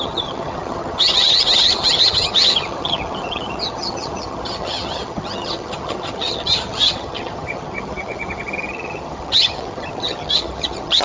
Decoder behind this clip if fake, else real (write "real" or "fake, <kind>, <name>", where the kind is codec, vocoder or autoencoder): fake, vocoder, HiFi-GAN